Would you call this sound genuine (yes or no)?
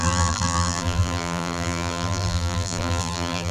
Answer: no